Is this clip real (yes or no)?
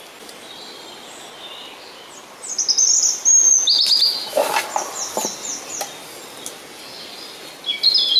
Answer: yes